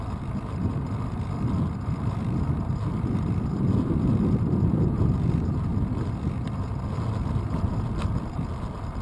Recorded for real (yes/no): no